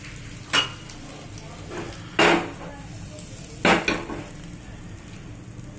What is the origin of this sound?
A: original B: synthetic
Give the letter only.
A